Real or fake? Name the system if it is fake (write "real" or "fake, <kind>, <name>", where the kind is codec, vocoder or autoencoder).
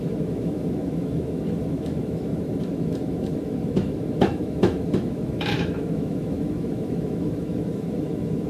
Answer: fake, autoencoder, DAC-VAE